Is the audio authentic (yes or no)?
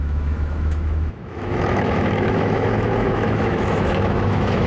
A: no